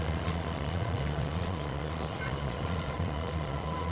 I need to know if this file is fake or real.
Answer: fake